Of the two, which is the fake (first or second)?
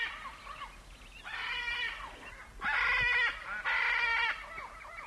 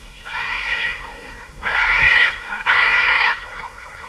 second